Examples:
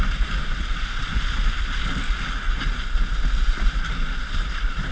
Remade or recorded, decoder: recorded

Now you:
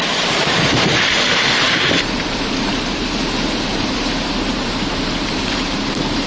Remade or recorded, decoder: remade, vocoder, BigVGAN v2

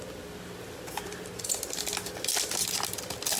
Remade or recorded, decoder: recorded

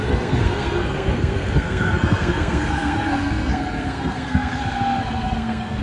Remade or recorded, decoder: remade, codec, SNAC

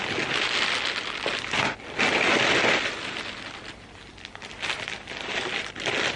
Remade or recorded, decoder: recorded